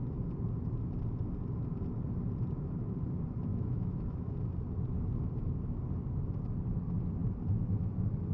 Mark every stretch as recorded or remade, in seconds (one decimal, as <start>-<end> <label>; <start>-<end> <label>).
0.0-3.5 recorded; 3.5-4.3 remade; 4.3-8.3 recorded